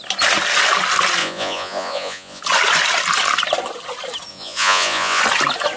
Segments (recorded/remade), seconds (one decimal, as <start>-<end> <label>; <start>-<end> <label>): 0.0-1.2 recorded; 1.2-2.4 remade; 2.4-4.3 recorded; 4.3-5.2 remade; 5.2-5.8 recorded